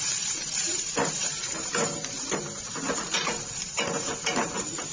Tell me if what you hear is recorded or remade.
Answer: remade